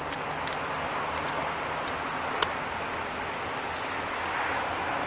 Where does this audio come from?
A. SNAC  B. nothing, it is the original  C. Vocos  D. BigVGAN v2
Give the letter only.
B